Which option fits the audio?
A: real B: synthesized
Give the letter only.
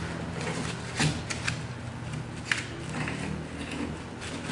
A